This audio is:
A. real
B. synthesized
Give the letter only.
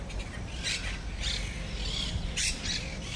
A